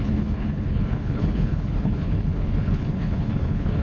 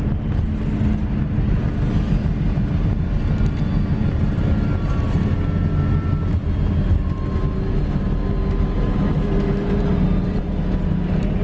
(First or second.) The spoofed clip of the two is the first